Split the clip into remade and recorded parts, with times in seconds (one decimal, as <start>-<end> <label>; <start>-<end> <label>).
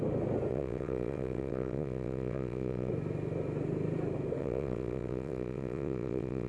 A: 0.0-0.5 recorded; 0.5-2.9 remade; 2.9-4.4 recorded; 4.4-6.5 remade